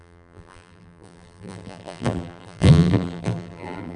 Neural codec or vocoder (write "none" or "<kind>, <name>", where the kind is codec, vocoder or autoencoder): vocoder, BigVGAN v2